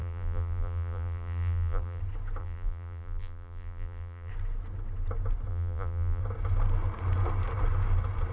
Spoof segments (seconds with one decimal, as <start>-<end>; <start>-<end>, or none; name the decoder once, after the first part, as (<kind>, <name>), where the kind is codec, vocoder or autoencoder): 0.0-2.0 (vocoder, BigVGAN v2); 2.4-4.3; 5.5-6.2